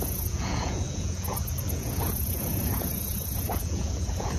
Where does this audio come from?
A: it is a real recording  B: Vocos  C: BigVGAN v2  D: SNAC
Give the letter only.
B